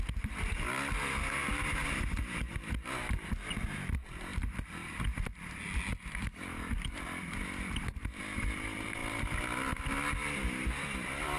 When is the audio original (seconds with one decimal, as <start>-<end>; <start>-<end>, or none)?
0.0-1.8; 2.5-4.3; 7.6-9.0; 9.9-11.4

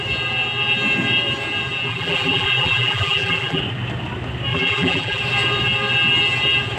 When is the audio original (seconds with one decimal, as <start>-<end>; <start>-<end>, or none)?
0.0-1.9; 3.6-4.5; 5.2-6.8

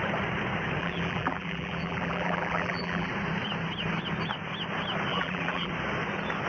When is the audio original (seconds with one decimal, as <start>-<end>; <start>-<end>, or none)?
0.0-0.8; 3.1-5.1; 5.7-6.5